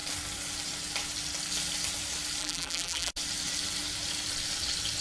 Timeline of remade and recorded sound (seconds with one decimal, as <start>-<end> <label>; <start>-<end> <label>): 0.0-2.4 recorded; 2.4-3.1 remade; 3.1-5.0 recorded